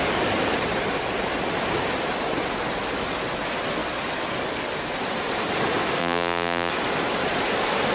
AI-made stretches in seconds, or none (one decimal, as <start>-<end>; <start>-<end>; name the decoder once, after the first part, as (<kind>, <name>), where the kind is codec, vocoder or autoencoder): 6.0-6.7 (vocoder, BigVGAN v2)